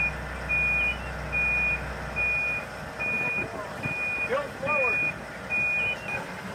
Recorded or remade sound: recorded